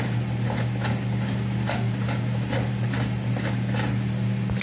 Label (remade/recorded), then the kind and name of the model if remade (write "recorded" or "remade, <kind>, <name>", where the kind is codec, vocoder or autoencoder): recorded